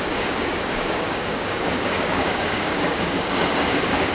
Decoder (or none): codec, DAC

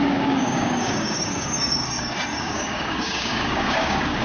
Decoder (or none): codec, DAC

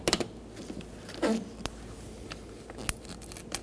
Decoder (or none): none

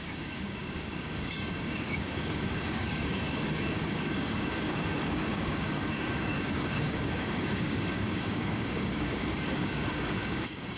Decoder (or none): codec, DAC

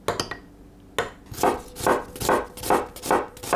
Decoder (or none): none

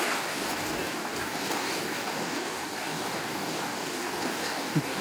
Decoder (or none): codec, DAC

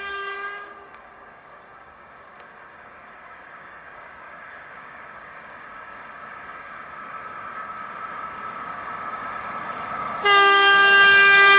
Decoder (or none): codec, DAC